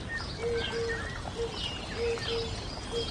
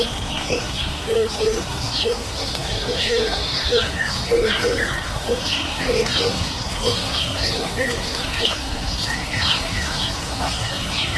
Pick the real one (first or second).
first